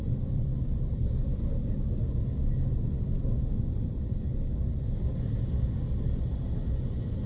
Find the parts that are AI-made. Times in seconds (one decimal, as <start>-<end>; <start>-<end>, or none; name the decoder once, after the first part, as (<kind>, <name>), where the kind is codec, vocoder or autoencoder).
none